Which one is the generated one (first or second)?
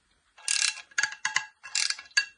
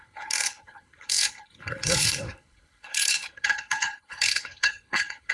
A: second